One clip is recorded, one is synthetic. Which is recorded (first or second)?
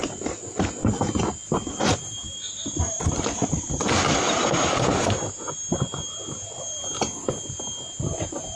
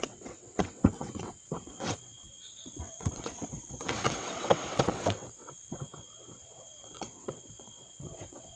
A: first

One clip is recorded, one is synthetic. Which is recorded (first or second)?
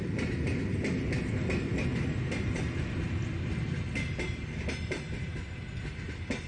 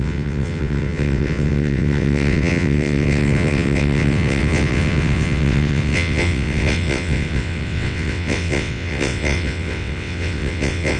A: first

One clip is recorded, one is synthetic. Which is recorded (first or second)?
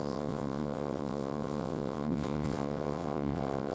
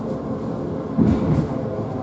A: second